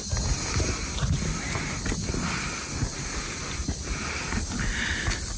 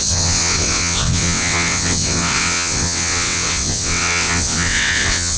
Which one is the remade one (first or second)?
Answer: second